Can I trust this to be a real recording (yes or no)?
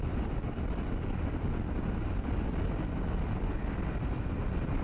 yes